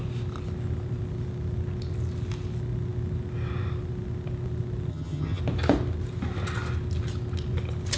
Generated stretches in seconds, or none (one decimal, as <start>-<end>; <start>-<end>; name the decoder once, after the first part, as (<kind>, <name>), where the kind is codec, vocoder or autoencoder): 4.9-5.4 (vocoder, HiFi-GAN)